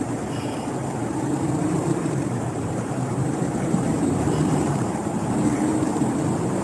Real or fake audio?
fake